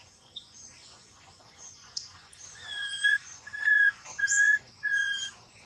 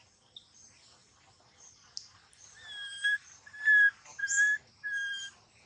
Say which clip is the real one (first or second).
second